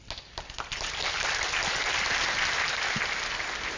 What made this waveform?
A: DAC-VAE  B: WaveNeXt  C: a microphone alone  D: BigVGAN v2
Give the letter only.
C